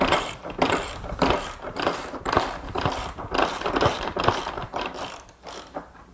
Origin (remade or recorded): remade